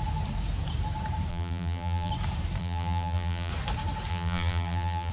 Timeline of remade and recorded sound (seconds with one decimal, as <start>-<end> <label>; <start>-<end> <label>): 0.0-1.3 recorded; 1.3-2.1 remade; 2.1-2.6 recorded; 2.6-3.5 remade; 3.5-4.1 recorded; 4.1-5.1 remade